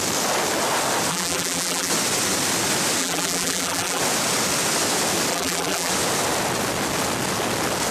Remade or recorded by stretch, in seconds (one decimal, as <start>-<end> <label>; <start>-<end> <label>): 0.0-1.1 recorded; 1.1-1.9 remade; 1.9-3.0 recorded; 3.0-4.0 remade; 4.0-5.3 recorded; 5.3-5.9 remade; 5.9-7.9 recorded